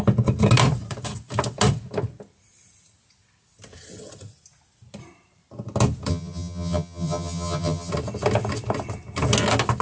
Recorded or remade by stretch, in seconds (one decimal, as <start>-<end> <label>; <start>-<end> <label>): 0.0-6.1 recorded; 6.1-7.9 remade; 7.9-9.8 recorded